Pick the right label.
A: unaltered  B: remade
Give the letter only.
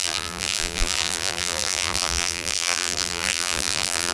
B